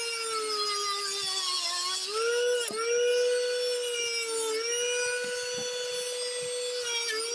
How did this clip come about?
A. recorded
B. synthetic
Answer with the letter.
A